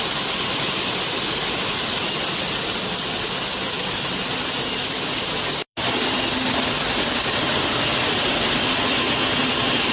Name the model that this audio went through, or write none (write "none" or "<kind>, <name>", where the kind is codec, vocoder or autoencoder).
none